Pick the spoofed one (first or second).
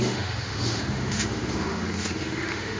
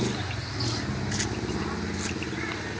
first